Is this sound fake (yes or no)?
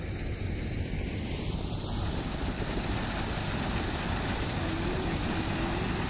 no